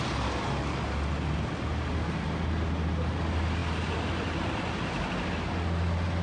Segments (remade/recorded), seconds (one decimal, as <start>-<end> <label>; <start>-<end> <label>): 0.0-6.2 recorded